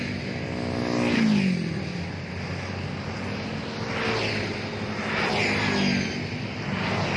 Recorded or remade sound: recorded